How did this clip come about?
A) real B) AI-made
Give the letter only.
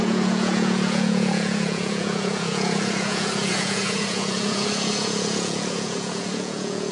B